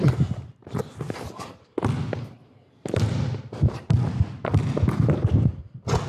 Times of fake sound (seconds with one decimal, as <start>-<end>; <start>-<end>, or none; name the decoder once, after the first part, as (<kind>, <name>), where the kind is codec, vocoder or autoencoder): none